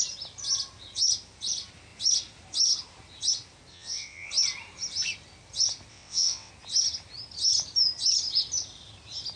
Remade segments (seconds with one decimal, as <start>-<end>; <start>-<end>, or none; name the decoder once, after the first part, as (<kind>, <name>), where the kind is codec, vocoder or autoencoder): 3.7-4.3 (vocoder, WaveNeXt); 5.9-6.5